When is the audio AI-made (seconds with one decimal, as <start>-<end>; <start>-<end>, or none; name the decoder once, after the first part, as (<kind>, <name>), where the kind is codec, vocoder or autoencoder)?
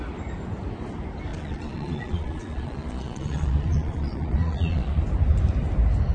1.3-5.0 (vocoder, Vocos)